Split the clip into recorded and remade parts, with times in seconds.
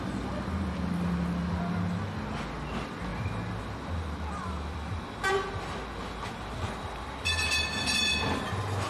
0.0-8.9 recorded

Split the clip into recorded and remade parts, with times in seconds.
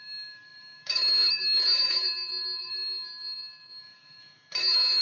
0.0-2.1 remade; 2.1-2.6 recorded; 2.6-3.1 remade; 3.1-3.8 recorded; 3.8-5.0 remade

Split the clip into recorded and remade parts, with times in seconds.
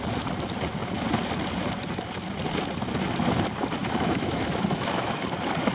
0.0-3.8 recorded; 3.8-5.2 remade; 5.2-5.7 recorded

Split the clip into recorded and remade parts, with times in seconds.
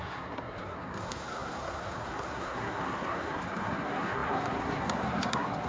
0.0-5.7 remade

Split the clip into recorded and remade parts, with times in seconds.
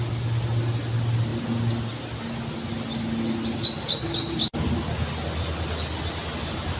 0.0-6.8 recorded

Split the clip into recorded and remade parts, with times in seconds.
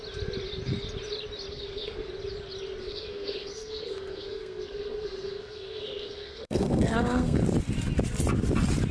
0.0-1.5 recorded; 1.5-2.1 remade; 2.1-2.8 recorded; 2.8-7.4 remade; 7.4-8.9 recorded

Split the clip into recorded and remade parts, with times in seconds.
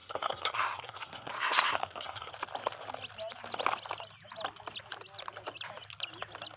0.0-2.3 remade; 2.3-6.6 recorded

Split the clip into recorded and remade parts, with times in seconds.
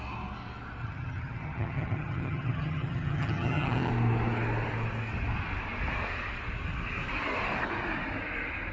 0.0-0.8 recorded; 0.8-3.9 remade; 3.9-8.7 recorded